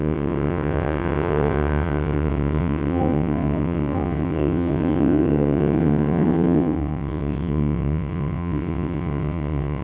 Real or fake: fake